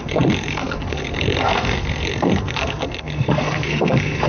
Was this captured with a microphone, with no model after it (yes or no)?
no